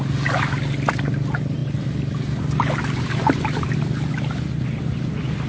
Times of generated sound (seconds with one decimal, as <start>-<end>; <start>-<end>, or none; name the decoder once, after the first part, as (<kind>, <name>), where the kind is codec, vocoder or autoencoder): none